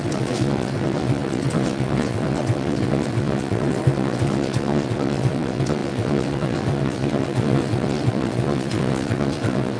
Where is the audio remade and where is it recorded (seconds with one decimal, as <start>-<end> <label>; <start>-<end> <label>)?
0.0-9.8 remade